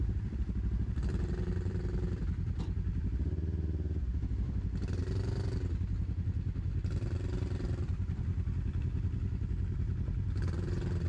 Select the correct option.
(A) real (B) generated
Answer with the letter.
B